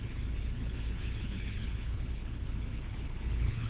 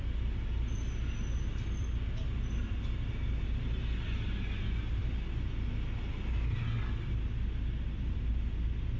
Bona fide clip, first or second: second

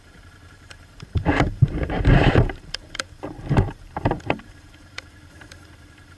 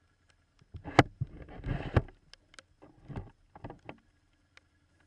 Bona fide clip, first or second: second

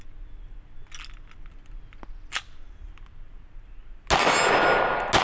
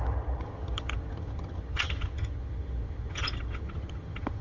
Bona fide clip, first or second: first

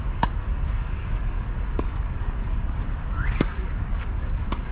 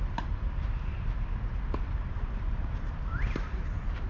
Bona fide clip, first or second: second